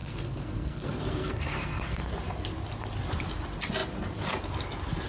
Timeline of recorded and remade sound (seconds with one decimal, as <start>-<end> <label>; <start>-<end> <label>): 0.0-2.0 remade; 2.0-5.1 recorded